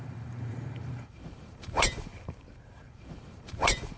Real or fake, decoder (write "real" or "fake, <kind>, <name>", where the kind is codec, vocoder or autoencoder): fake, vocoder, BigVGAN v2